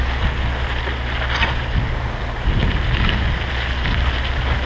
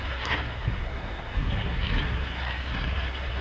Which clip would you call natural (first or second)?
first